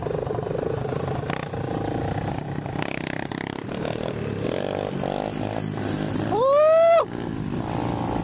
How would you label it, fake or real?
real